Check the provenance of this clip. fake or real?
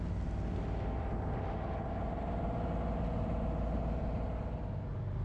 real